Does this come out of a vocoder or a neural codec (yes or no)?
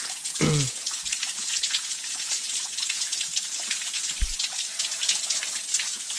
yes